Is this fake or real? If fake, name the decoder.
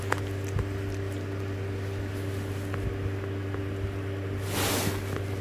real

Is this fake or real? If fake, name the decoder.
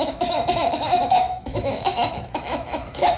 fake, autoencoder, DAC-VAE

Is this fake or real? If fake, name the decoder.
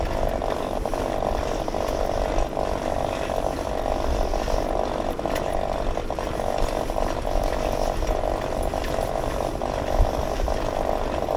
real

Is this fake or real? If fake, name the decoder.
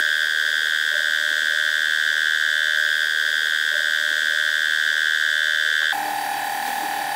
real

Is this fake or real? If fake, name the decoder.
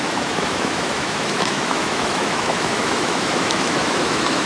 fake, autoencoder, DAC-VAE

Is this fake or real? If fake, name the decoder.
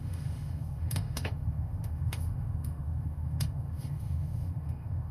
fake, autoencoder, DAC-VAE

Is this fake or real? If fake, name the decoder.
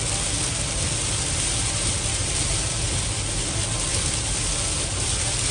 real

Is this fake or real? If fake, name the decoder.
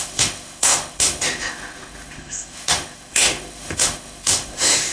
fake, autoencoder, DAC-VAE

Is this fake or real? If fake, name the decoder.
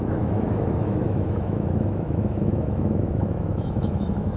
fake, autoencoder, DAC-VAE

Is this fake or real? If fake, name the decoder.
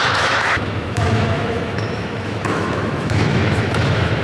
fake, autoencoder, DAC-VAE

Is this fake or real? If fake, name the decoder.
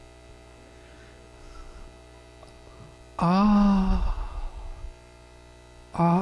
real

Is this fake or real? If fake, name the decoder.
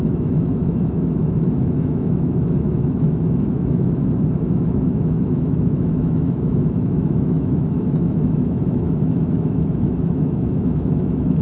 fake, autoencoder, DAC-VAE